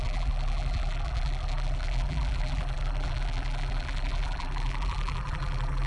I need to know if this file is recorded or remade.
remade